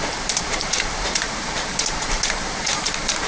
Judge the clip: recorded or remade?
remade